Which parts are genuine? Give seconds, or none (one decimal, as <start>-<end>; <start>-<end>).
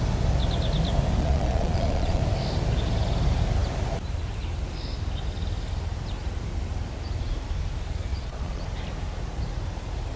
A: 0.0-1.2; 2.2-8.1; 8.6-10.2